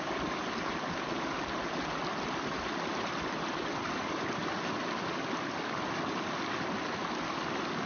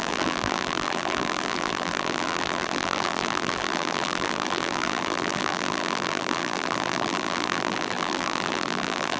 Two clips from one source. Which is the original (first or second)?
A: first